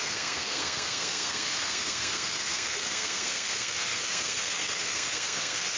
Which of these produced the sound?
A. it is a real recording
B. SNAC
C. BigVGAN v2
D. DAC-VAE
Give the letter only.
B